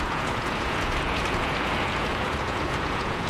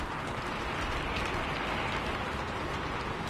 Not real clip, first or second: first